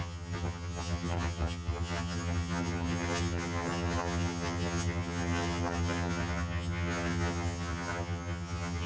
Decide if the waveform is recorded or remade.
remade